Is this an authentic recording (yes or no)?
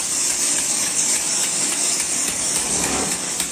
no